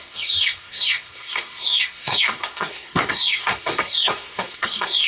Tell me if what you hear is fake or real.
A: fake